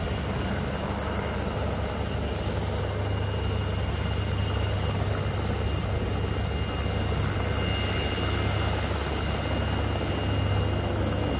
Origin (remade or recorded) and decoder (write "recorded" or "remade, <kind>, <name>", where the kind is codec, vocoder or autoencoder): recorded